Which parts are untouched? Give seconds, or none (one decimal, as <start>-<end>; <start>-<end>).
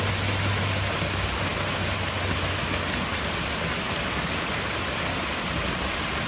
0.0-6.3